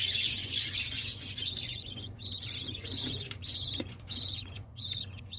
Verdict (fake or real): fake